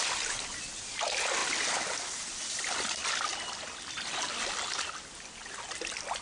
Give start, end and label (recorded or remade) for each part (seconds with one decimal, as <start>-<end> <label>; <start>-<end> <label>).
0.0-6.2 recorded